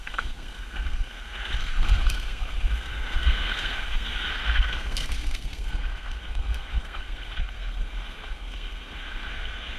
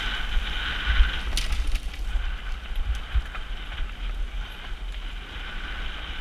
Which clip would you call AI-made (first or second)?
first